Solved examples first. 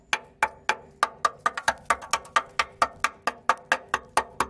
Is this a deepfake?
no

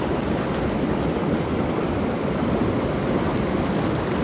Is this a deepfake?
no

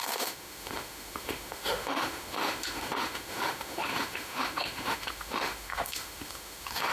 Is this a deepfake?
yes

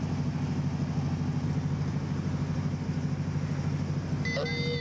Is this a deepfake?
no